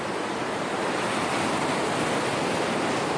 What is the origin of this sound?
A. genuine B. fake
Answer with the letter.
A